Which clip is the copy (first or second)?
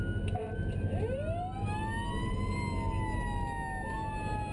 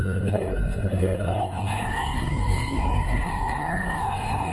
second